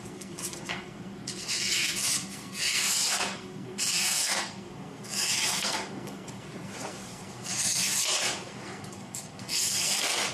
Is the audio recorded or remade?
remade